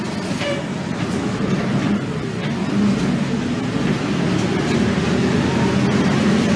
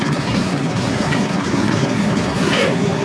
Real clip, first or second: first